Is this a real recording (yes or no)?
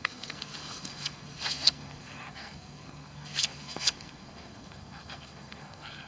no